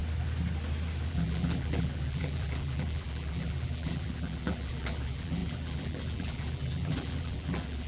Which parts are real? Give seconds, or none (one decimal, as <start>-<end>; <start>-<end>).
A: 0.0-1.1